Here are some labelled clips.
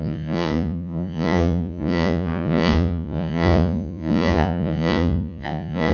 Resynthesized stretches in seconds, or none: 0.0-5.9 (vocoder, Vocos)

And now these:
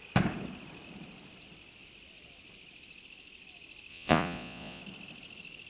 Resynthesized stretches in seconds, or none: 3.9-4.8 (vocoder, Vocos)

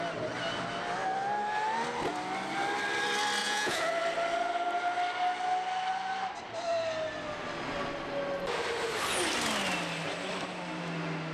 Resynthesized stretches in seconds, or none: 3.4-3.9 (vocoder, Vocos)